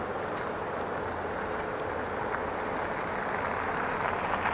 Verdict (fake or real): real